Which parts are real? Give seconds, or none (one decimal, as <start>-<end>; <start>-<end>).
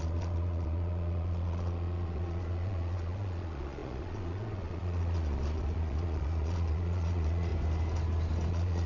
7.5-8.5